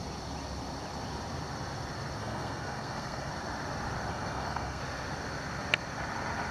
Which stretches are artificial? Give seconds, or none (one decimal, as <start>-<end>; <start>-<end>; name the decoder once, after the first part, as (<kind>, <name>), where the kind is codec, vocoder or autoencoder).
2.2-3.3 (codec, SNAC); 4.1-4.8